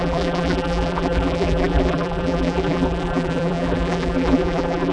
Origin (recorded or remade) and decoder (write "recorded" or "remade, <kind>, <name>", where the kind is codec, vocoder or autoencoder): remade, vocoder, BigVGAN v2